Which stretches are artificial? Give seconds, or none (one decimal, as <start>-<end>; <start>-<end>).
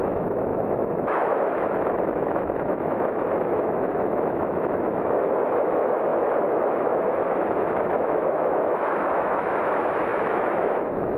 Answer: 0.0-11.2